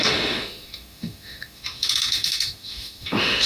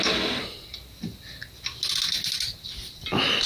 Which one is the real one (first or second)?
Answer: second